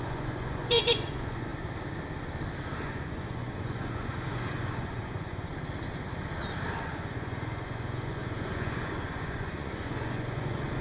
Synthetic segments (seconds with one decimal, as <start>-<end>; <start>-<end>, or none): 0.0-1.5; 2.8-5.5; 6.8-10.8